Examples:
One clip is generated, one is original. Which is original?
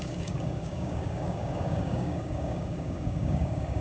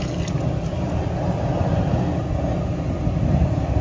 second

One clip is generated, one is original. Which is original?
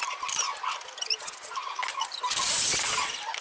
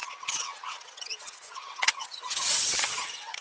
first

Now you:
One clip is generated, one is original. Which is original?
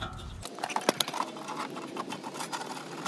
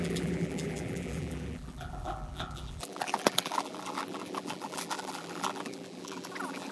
first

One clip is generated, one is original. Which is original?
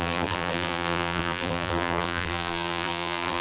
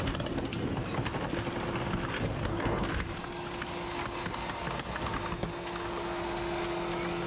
second